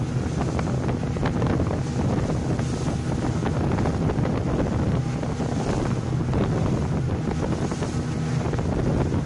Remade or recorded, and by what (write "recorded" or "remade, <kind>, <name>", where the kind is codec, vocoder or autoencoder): recorded